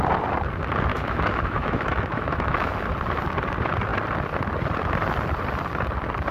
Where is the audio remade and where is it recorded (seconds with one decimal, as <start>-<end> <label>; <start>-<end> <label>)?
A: 0.0-0.9 recorded; 0.9-2.9 remade; 2.9-6.3 recorded